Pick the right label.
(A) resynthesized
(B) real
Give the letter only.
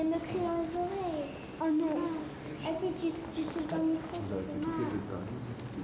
B